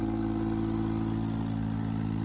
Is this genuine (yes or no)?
yes